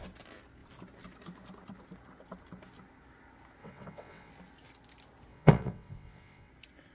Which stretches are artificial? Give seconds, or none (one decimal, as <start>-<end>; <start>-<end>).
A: 3.6-4.3; 5.3-6.5